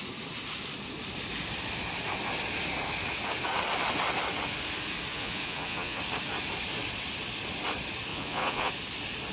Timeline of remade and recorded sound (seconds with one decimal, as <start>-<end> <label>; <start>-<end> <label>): 0.0-5.1 recorded; 5.1-6.0 remade; 6.0-8.1 recorded; 8.1-8.7 remade; 8.7-9.3 recorded

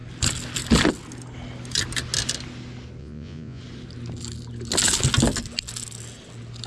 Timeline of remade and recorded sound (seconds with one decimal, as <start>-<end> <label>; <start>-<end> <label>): 0.0-3.0 recorded; 3.0-3.6 remade; 3.6-6.7 recorded

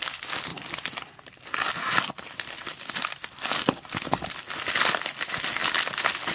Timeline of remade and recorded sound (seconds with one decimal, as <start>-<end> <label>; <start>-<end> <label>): 0.0-0.5 recorded; 0.5-4.3 remade; 4.3-6.3 recorded

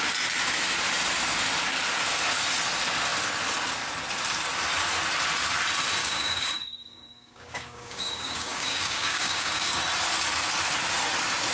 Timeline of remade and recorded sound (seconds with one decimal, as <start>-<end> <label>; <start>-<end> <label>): 0.0-6.0 recorded; 6.0-9.8 remade; 9.8-11.5 recorded

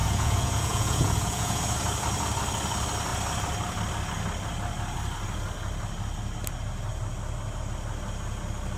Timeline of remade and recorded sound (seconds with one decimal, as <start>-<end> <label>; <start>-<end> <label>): 0.0-1.6 remade; 1.6-8.8 recorded